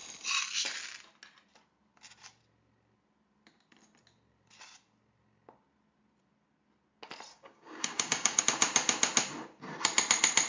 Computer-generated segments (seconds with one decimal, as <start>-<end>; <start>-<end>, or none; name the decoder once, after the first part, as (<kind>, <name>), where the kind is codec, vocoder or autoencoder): 7.3-8.4 (codec, DAC)

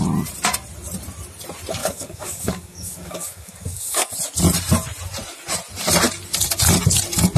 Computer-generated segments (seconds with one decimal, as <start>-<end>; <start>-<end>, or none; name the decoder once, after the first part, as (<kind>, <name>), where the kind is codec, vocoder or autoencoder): 1.8-4.1 (codec, DAC)